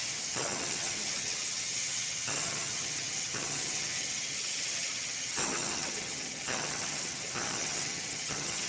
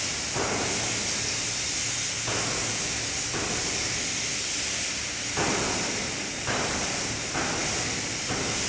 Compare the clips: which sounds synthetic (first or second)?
first